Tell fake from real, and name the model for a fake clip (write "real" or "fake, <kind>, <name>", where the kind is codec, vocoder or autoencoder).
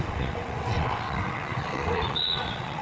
fake, vocoder, WaveNeXt